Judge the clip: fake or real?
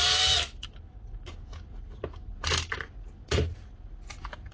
real